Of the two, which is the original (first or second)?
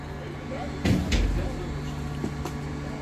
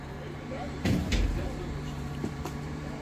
first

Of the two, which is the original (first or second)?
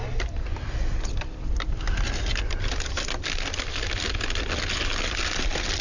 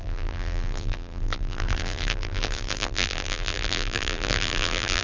first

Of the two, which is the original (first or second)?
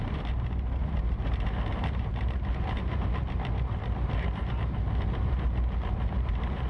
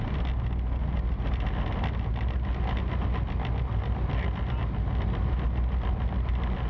second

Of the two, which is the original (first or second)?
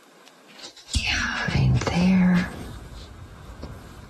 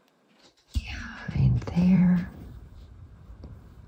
first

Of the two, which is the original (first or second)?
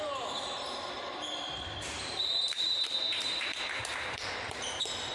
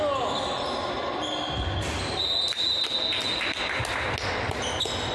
second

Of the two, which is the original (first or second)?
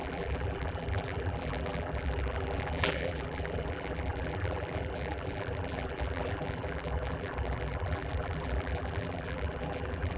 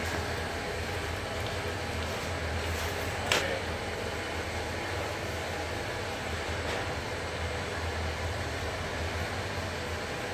second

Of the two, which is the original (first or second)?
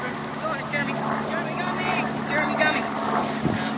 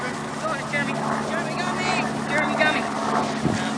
second